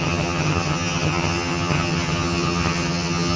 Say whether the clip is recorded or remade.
remade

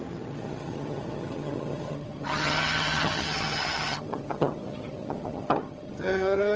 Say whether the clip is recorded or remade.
remade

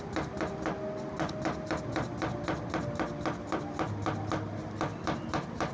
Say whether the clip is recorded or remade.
recorded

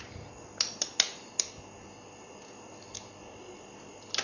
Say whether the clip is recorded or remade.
recorded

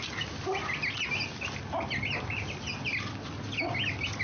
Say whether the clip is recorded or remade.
recorded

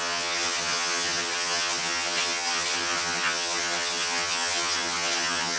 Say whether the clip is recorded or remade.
remade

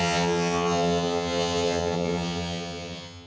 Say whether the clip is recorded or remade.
remade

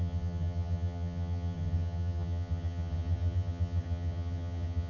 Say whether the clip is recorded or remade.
remade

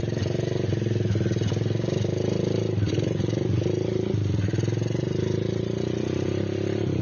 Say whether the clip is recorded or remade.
recorded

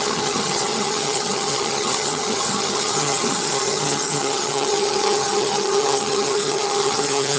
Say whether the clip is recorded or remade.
remade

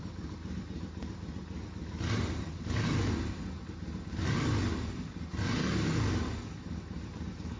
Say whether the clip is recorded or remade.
recorded